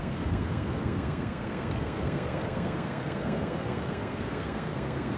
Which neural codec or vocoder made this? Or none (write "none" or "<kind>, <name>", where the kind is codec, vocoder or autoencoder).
codec, SNAC